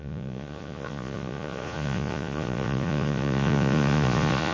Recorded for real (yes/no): no